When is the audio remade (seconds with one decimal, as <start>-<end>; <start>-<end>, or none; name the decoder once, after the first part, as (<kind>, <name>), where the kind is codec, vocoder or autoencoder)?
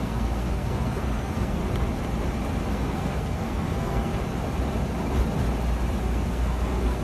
0.0-1.6 (codec, SNAC); 2.7-4.1; 6.0-7.0